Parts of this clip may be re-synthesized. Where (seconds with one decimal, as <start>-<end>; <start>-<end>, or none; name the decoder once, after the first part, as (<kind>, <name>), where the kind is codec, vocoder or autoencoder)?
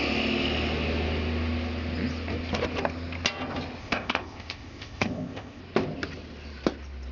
3.8-5.6 (codec, ZipCodec)